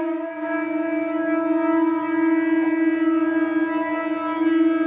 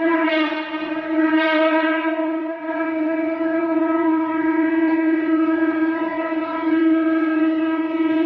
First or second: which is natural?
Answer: first